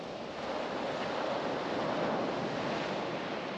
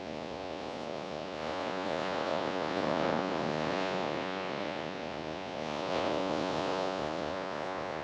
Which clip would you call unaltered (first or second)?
first